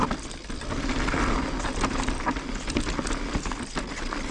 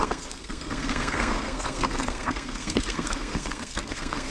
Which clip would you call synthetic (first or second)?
second